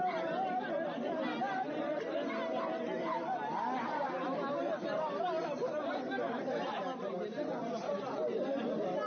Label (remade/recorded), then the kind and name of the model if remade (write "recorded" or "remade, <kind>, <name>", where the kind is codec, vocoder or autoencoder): remade, vocoder, BigVGAN v2